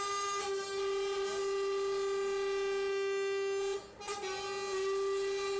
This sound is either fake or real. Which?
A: real